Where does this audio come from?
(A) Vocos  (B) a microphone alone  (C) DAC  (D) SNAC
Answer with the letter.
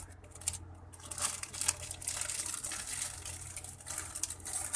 B